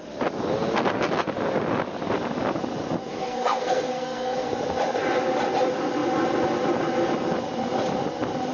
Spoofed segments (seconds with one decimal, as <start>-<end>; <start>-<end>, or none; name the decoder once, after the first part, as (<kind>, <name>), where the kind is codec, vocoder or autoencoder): 3.1-4.5 (codec, SNAC)